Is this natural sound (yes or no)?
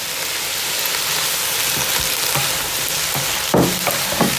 yes